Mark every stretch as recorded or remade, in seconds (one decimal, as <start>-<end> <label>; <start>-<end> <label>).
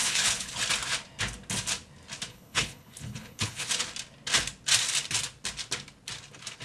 0.0-0.6 remade; 0.6-2.3 recorded; 2.3-3.7 remade; 3.7-6.6 recorded